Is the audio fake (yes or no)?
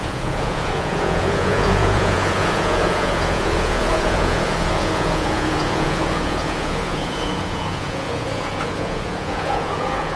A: yes